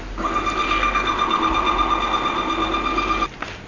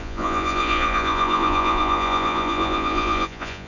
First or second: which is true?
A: first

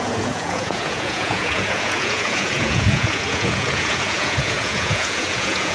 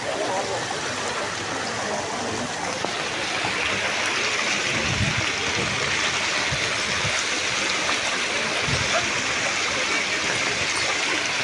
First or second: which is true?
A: second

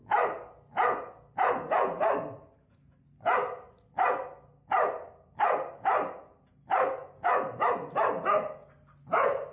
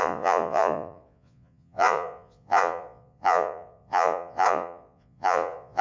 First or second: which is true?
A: first